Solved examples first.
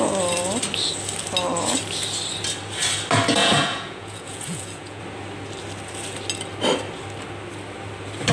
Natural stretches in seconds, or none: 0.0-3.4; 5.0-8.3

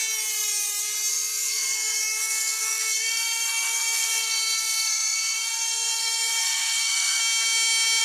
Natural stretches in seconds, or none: 0.0-1.1; 7.2-8.0

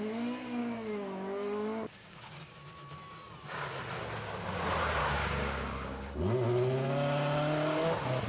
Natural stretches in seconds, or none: 0.0-0.6; 2.5-5.0; 6.1-8.3

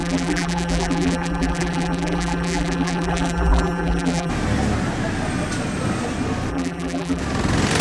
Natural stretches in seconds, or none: 4.3-6.5; 7.2-7.8

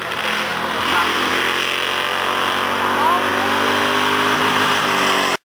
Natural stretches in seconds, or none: 0.0-5.6

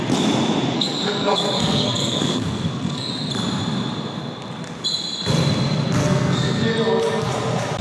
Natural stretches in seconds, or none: 0.0-0.7; 3.1-6.0; 6.7-7.8